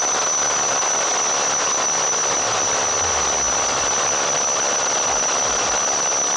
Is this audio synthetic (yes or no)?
no